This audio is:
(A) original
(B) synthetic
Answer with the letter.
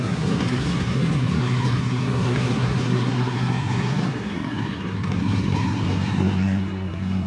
B